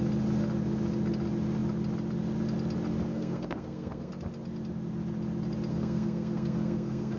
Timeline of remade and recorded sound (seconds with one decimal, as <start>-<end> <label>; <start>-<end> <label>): 0.0-3.1 recorded; 3.1-4.1 remade; 4.1-5.7 recorded; 5.7-7.2 remade